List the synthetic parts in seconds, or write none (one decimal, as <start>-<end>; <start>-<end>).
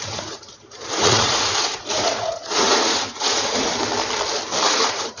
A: 0.0-3.7; 4.7-5.2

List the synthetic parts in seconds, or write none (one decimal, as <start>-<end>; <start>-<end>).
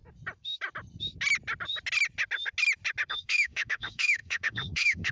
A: 3.1-5.1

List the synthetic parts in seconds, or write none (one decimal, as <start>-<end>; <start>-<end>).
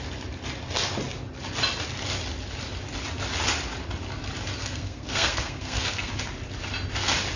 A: 4.6-6.1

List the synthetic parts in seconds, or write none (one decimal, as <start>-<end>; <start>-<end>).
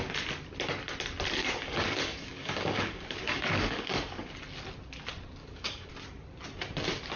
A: 1.4-4.3; 5.4-5.9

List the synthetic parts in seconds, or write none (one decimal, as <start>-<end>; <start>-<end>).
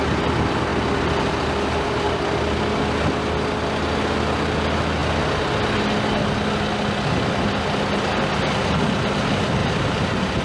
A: 9.6-10.4